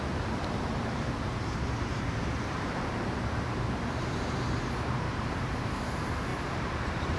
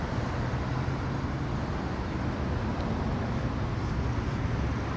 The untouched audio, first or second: second